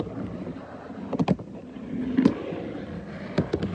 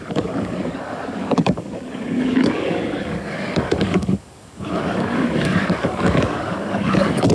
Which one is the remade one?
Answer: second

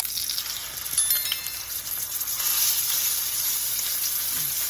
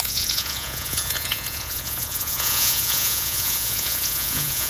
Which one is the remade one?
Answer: second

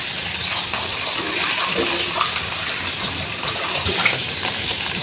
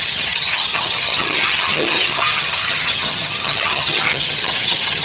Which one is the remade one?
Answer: second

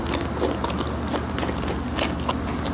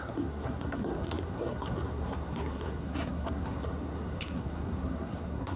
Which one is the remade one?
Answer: second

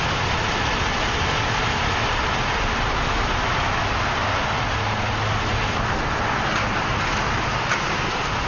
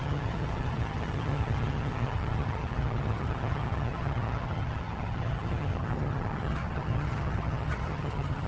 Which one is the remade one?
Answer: second